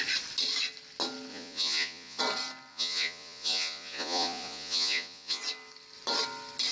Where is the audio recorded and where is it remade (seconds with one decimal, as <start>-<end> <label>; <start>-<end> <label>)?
0.0-1.3 recorded; 1.3-2.2 remade; 2.2-2.7 recorded; 2.7-5.4 remade; 5.4-6.7 recorded